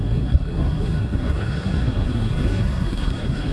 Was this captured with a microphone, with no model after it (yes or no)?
no